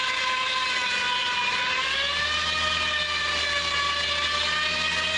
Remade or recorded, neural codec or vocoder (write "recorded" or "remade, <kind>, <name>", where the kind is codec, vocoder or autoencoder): recorded